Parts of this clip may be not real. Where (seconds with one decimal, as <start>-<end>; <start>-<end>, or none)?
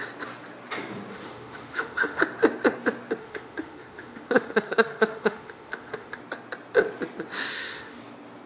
1.1-2.2; 3.2-6.2; 7.5-8.0